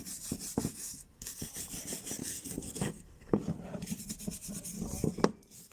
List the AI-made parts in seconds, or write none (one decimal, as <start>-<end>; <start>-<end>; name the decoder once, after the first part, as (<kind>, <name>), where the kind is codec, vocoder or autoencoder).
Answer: 0.7-1.5 (codec, SNAC); 2.2-3.4

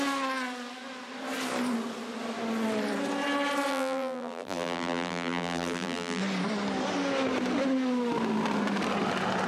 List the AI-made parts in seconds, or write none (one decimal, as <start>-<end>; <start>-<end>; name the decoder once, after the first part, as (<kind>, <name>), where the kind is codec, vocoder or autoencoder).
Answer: 3.7-6.2 (vocoder, BigVGAN v2)

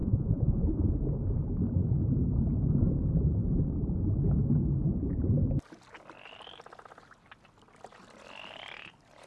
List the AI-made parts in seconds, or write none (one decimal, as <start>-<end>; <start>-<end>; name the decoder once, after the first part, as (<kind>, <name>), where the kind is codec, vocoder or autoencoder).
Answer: 0.0-0.9 (vocoder, Vocos)

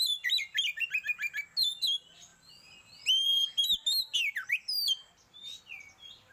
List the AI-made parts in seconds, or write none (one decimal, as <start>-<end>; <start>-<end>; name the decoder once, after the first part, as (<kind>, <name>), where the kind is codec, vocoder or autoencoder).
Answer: none

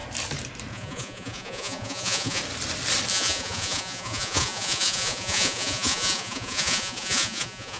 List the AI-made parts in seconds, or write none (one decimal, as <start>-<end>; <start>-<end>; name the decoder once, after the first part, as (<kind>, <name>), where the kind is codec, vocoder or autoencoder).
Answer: 0.7-2.4 (vocoder, Vocos); 3.1-7.8

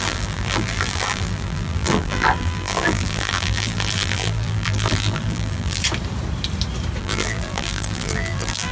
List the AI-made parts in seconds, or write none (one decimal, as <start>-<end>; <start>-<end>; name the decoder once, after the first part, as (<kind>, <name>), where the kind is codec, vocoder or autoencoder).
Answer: 0.0-5.8 (vocoder, BigVGAN v2); 7.0-8.7